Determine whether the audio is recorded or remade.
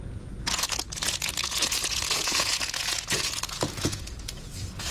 remade